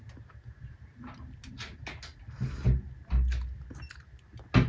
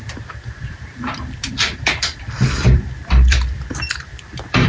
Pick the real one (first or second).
first